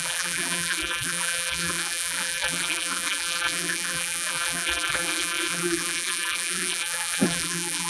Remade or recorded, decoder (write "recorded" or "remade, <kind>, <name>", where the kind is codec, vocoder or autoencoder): remade, vocoder, BigVGAN v2